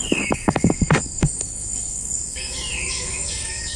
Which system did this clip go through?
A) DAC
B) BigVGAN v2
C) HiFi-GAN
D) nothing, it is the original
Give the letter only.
A